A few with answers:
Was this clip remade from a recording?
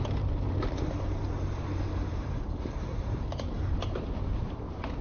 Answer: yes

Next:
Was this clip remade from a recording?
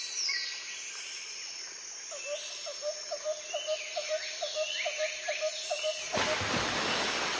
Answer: no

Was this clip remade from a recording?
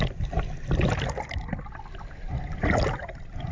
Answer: no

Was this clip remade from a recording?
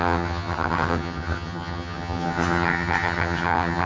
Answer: yes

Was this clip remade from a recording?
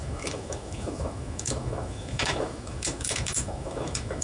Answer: yes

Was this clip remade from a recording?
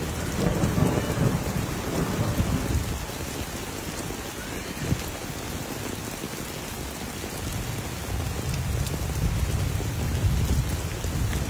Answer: no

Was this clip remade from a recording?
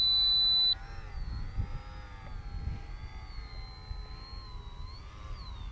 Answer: no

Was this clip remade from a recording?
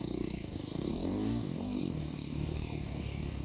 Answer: yes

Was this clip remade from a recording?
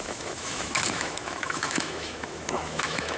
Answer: yes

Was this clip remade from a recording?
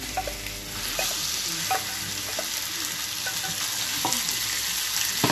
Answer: no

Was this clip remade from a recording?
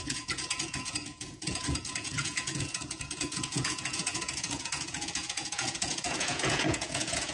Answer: yes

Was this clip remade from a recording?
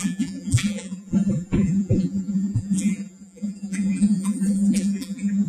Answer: yes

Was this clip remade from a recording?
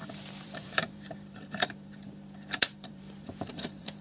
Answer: yes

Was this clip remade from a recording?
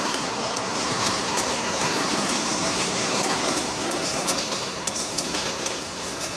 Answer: yes